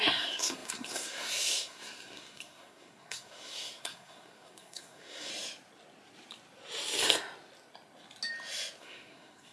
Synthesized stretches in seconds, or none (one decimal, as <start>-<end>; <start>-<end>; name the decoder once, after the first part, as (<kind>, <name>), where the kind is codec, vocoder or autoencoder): 0.0-5.3 (codec, SNAC); 8.8-9.5